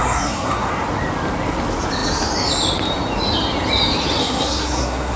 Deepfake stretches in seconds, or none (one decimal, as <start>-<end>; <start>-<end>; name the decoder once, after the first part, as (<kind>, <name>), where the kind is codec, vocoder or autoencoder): 0.0-0.7 (codec, SNAC); 4.2-5.2